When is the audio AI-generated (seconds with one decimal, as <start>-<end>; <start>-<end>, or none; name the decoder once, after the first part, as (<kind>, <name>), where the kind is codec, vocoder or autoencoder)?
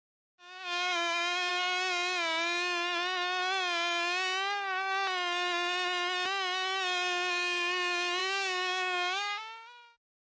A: 0.0-1.5 (codec, DAC); 8.2-9.4